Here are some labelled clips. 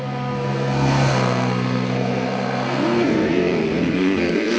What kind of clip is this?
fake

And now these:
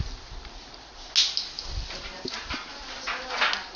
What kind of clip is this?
real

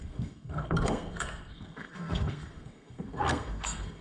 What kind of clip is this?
fake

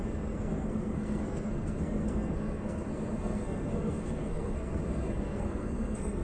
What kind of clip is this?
fake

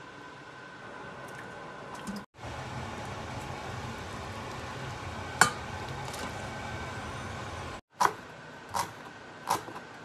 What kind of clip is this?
real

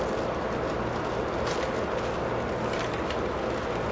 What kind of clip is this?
real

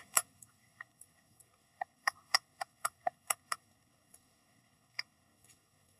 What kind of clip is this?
fake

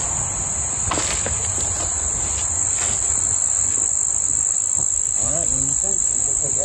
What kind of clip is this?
real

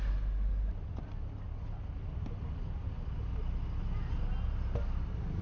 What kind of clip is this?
real